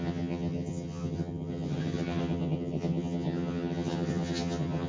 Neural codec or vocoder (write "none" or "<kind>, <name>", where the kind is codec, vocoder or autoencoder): vocoder, HiFi-GAN